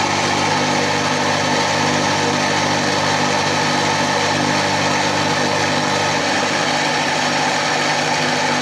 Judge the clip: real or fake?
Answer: real